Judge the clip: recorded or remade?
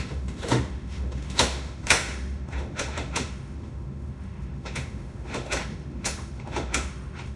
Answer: remade